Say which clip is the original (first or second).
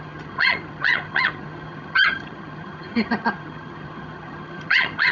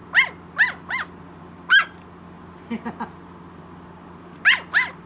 second